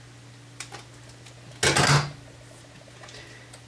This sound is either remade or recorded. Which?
recorded